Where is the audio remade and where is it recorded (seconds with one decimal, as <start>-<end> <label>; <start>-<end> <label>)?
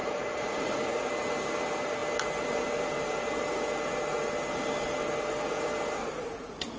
0.0-1.1 remade; 1.1-6.0 recorded; 6.0-6.8 remade